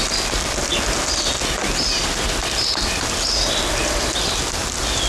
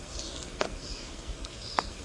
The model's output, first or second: second